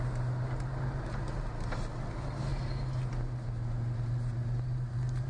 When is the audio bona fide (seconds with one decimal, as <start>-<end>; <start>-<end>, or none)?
0.0-5.3